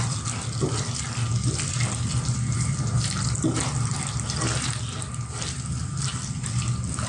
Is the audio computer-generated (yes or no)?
no